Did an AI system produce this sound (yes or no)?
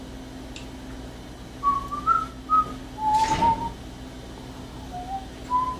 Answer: no